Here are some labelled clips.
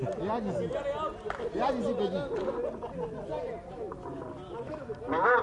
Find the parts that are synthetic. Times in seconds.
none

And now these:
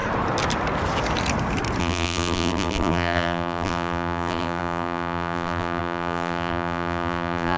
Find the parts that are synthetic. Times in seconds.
1.8-7.6 (vocoder, BigVGAN v2)

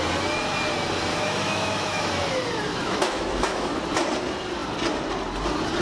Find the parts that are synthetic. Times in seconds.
1.1-2.1 (autoencoder, DAC-VAE); 2.7-3.8

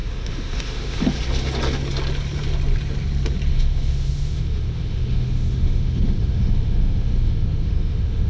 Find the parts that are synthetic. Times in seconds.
0.0-1.0 (autoencoder, DAC-VAE); 3.5-8.3

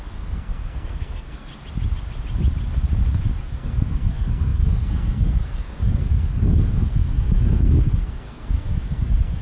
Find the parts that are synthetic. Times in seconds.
0.0-1.5 (codec, SNAC); 3.4-9.4

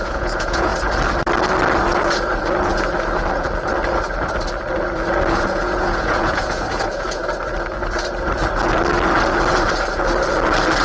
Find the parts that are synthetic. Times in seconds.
0.0-0.7 (vocoder, Vocos); 5.3-7.2

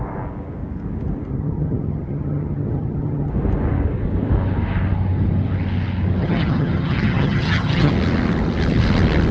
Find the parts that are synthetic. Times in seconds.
1.3-3.3 (vocoder, HiFi-GAN); 6.2-7.9

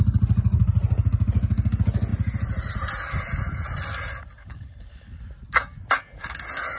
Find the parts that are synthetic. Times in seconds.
4.4-5.2 (codec, HILCodec)